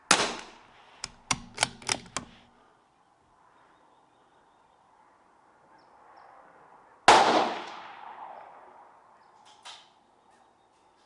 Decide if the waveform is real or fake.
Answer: real